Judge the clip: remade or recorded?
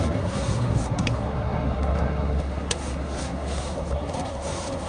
remade